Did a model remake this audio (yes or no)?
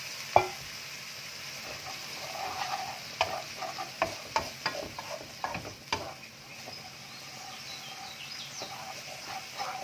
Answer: no